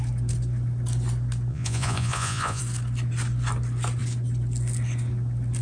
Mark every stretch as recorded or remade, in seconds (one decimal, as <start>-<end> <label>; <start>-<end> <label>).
0.0-1.5 recorded; 1.5-2.6 remade; 2.6-5.6 recorded